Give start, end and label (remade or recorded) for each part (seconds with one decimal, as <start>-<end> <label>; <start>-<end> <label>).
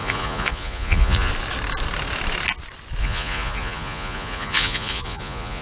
0.0-1.3 remade; 1.3-3.0 recorded; 3.0-5.6 remade